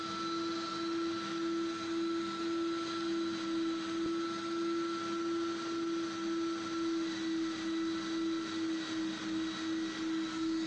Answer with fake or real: real